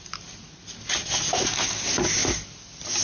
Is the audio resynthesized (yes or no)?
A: no